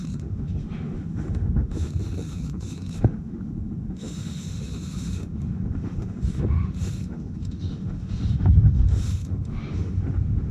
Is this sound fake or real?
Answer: fake